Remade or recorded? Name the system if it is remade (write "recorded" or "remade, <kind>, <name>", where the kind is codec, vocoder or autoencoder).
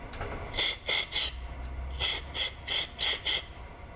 recorded